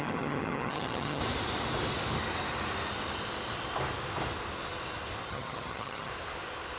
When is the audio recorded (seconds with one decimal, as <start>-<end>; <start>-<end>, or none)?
1.2-5.3; 6.1-6.8